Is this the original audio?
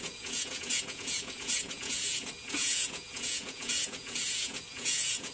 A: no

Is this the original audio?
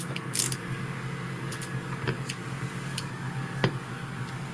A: no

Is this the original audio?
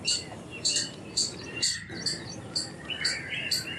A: yes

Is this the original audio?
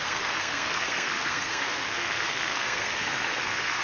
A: no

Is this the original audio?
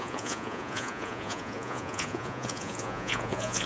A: no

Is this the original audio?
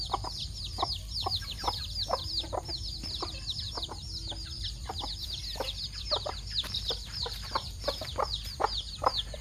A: no